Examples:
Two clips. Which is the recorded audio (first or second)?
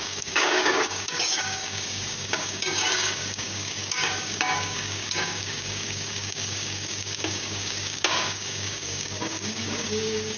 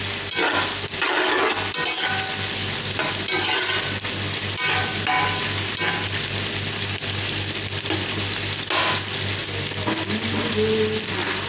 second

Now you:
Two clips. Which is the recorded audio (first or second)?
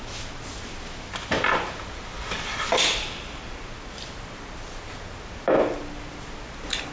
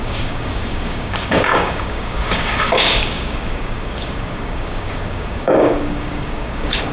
first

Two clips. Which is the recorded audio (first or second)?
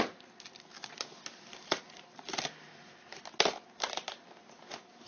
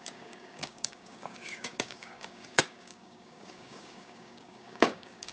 first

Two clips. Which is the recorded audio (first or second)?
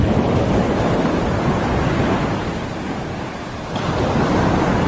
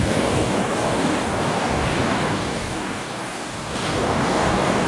first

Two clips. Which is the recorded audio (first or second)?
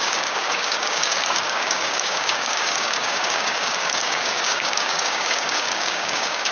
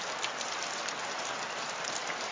second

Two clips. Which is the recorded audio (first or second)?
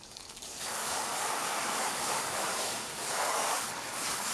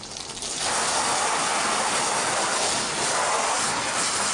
second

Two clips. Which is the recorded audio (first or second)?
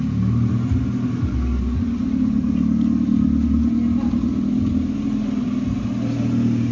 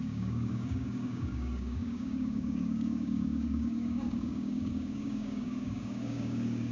first